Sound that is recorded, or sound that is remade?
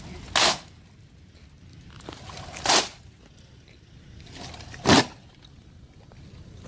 recorded